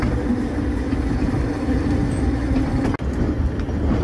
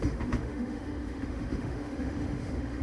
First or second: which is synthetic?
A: second